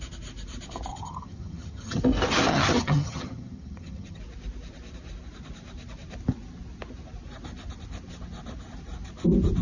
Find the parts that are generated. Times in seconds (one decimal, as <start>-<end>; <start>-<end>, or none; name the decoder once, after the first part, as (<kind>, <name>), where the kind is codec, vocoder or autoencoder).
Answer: 0.9-2.0 (vocoder, HiFi-GAN); 2.5-4.2